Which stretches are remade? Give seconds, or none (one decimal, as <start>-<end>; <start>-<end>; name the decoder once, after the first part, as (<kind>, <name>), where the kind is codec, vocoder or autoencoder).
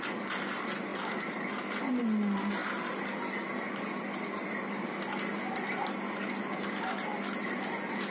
none